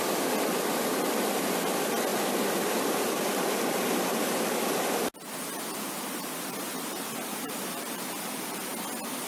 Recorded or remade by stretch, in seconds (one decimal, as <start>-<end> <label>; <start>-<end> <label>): 0.0-7.3 recorded; 7.3-8.7 remade; 8.7-9.3 recorded